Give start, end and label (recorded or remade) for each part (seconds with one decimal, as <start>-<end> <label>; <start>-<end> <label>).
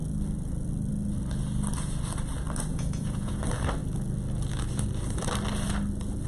0.0-2.7 recorded; 2.7-3.4 remade; 3.4-6.3 recorded